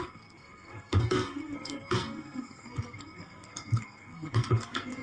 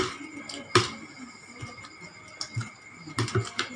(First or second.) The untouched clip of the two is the second